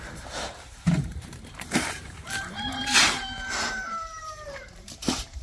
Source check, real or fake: fake